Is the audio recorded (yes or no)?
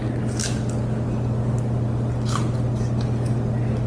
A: yes